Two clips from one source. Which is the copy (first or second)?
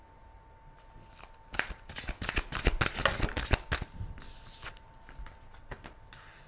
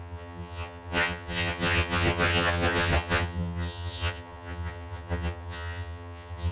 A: second